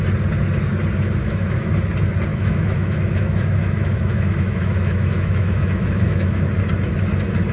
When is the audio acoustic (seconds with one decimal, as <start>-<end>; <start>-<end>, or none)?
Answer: 0.0-1.2; 1.7-2.3; 6.4-7.5